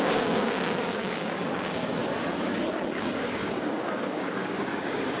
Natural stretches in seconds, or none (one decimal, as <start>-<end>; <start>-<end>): 1.9-2.9